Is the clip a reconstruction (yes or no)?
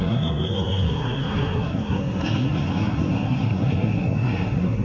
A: yes